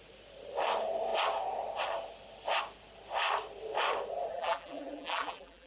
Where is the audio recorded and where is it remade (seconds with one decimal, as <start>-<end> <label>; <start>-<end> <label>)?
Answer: 0.0-4.3 recorded; 4.3-5.7 remade